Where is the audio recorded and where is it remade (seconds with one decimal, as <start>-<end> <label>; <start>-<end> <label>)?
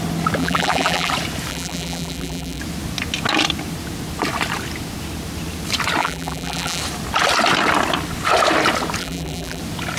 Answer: 0.0-0.4 recorded; 0.4-1.1 remade; 1.1-1.5 recorded; 1.5-2.6 remade; 2.6-6.0 recorded; 6.0-6.8 remade; 6.8-9.0 recorded; 9.0-9.6 remade; 9.6-10.0 recorded